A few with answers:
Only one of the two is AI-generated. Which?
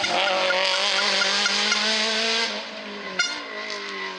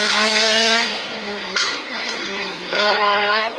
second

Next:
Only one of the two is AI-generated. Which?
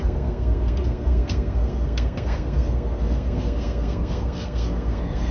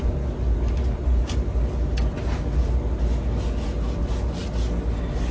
first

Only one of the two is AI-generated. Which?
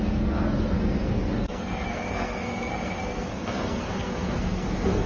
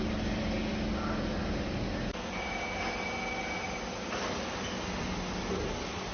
first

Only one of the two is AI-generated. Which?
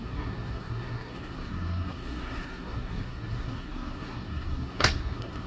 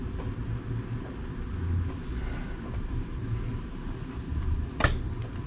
first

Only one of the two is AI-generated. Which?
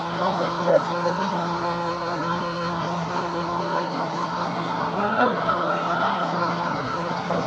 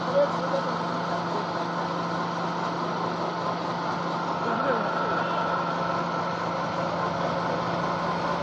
first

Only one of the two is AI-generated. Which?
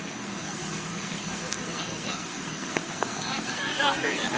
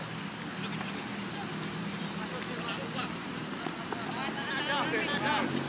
first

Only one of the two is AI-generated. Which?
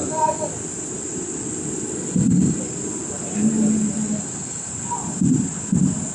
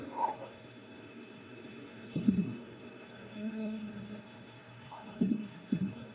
second